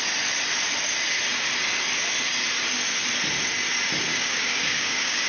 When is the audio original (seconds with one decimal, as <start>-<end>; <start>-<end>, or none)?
0.0-4.1